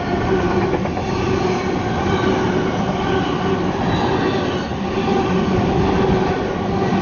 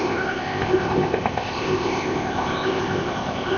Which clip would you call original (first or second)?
first